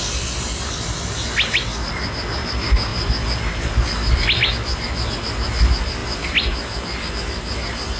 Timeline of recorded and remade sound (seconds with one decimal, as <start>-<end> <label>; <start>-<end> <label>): 0.0-8.0 recorded